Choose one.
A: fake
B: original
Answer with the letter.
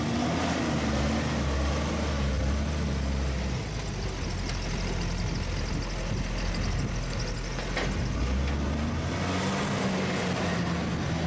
B